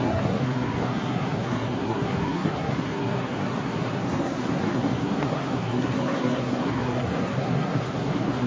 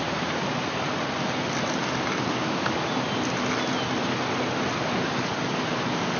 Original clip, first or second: second